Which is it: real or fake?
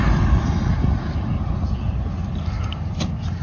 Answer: real